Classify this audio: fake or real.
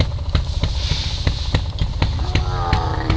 real